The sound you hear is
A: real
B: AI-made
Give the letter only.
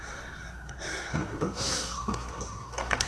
B